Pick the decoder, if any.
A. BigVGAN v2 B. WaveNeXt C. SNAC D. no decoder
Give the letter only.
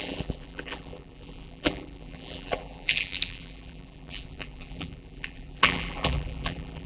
A